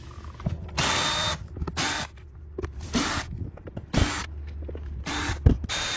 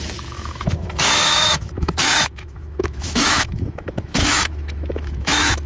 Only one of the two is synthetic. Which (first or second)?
second